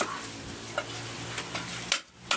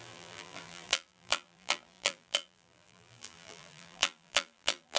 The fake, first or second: second